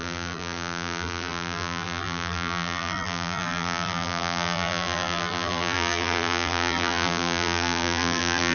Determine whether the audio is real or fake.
fake